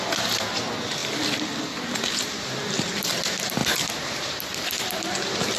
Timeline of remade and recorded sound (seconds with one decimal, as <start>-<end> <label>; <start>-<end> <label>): 0.0-5.6 recorded